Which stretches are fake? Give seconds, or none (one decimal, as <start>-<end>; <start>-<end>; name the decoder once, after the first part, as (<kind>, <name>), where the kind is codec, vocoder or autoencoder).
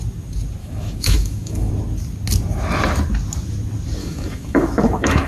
0.6-1.7 (autoencoder, DAC-VAE); 4.0-5.3